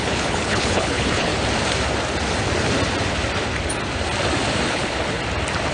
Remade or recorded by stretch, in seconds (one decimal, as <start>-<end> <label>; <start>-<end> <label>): 0.0-1.3 remade; 1.3-4.7 recorded; 4.7-5.2 remade; 5.2-5.7 recorded